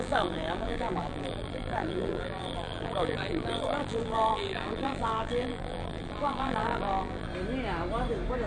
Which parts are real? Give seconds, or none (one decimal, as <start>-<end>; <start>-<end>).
7.3-8.5